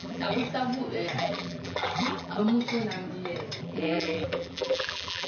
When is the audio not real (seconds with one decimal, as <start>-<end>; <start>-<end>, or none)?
0.0-0.4; 1.2-2.4; 3.6-5.3